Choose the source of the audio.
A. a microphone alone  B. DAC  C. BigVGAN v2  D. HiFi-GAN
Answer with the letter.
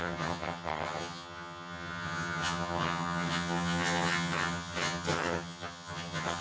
D